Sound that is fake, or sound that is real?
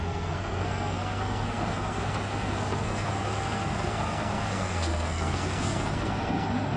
fake